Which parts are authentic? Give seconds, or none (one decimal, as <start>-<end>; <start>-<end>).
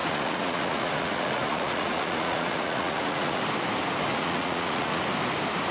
3.4-4.1; 5.0-5.7